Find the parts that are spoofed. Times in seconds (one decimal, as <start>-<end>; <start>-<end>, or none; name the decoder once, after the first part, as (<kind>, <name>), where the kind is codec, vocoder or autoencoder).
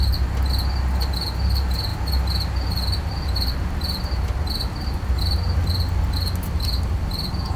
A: none